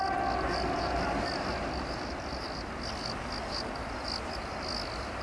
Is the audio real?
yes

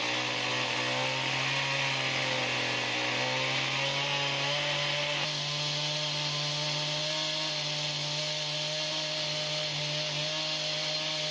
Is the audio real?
yes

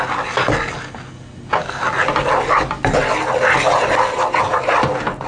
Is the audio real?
yes